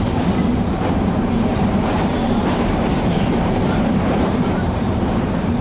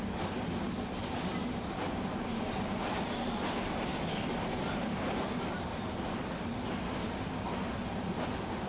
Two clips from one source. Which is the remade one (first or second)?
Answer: first